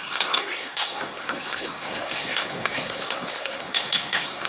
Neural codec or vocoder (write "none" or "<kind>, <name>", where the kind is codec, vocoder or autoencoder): codec, SNAC